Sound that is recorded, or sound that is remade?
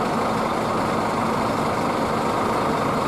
recorded